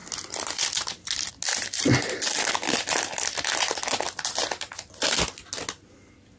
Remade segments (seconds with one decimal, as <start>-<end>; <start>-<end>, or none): none